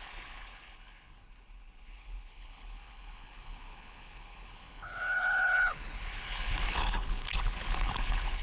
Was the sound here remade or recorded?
remade